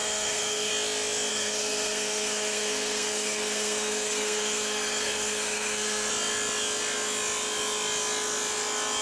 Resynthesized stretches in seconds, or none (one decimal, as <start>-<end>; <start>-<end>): 0.0-0.7; 1.3-6.1